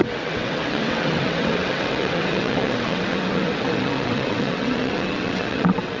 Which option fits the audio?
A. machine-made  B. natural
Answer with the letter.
A